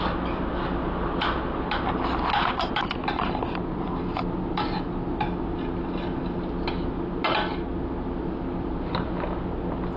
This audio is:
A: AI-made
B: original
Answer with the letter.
B